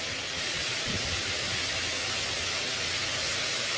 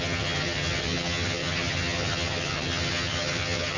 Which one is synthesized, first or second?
second